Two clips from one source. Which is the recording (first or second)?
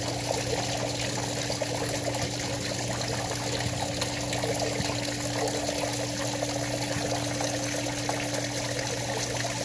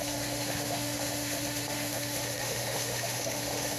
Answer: first